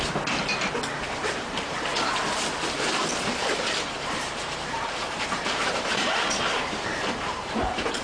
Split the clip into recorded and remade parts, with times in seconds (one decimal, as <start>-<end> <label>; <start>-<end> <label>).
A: 0.0-1.2 recorded; 1.2-2.2 remade; 2.2-3.4 recorded; 3.4-8.0 remade